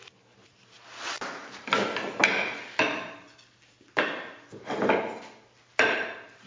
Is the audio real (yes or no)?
yes